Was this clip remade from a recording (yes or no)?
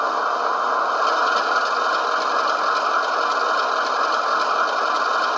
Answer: no